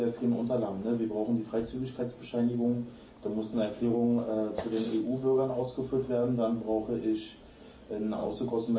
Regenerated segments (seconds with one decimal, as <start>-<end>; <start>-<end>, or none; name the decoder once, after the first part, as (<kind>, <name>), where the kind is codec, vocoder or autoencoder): 2.7-5.6 (codec, DAC); 8.2-8.8